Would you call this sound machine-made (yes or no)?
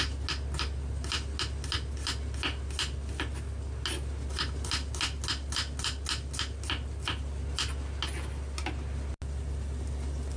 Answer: no